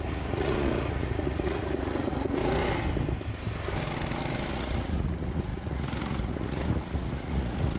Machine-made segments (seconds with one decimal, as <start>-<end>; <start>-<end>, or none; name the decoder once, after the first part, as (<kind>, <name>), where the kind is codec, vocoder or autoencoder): 0.0-2.4 (vocoder, Vocos); 4.5-7.8